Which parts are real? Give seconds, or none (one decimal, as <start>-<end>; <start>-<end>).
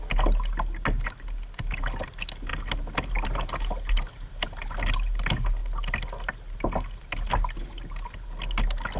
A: 0.0-9.0